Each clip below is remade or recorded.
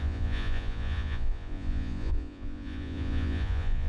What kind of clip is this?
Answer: remade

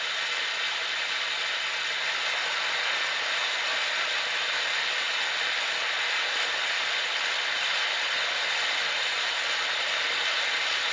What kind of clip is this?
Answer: recorded